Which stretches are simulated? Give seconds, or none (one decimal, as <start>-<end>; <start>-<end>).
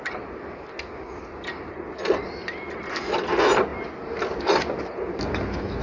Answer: none